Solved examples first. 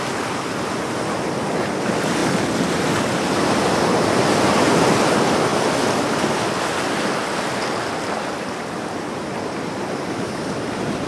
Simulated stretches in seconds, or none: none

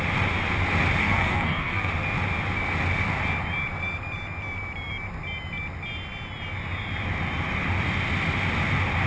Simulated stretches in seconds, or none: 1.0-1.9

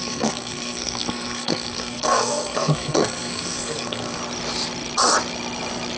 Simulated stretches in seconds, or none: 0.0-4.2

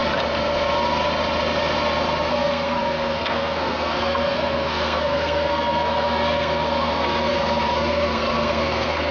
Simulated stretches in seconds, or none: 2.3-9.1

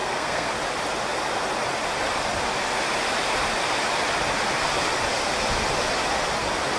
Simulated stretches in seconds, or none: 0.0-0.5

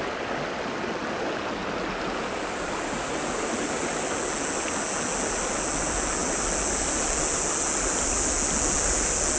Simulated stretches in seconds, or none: none

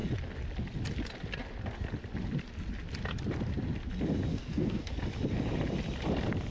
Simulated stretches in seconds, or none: 4.3-4.9